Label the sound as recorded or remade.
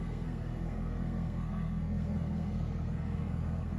remade